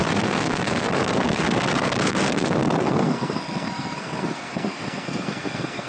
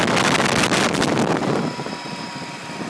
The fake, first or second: first